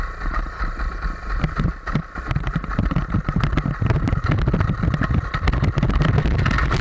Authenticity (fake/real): real